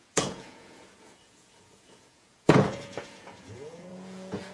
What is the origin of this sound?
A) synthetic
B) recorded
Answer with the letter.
A